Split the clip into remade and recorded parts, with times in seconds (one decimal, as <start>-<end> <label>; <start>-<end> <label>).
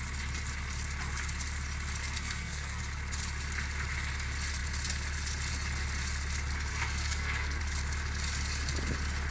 0.0-2.0 recorded; 2.0-2.8 remade; 2.8-6.7 recorded; 6.7-7.6 remade; 7.6-9.3 recorded